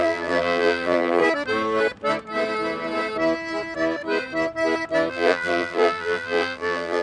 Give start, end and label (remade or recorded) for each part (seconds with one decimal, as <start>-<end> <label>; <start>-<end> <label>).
0.0-1.2 remade; 1.2-5.1 recorded; 5.1-7.0 remade